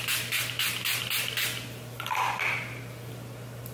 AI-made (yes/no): no